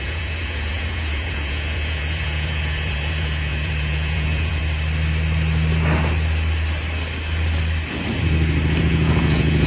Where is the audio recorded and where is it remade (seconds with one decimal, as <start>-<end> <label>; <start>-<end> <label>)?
0.0-4.6 remade; 4.6-8.8 recorded; 8.8-9.7 remade